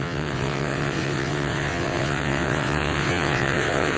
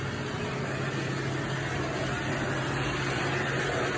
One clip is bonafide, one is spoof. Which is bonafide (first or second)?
second